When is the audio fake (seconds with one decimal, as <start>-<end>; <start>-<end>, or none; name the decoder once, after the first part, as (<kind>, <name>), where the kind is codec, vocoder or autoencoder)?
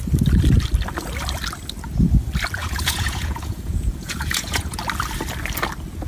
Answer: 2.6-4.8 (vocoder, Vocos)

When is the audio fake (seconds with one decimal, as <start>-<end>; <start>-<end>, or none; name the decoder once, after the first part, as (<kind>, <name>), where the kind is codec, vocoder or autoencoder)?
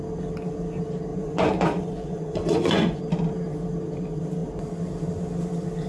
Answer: 1.1-3.0 (vocoder, Vocos)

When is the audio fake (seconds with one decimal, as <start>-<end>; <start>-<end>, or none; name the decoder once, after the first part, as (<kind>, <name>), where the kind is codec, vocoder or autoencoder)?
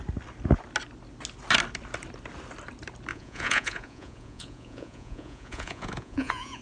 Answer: 3.1-6.6 (vocoder, Vocos)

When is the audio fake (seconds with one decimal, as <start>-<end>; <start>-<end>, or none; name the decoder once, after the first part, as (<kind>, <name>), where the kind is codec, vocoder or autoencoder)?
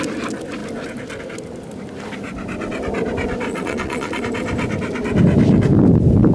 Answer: 3.5-4.2 (vocoder, Vocos)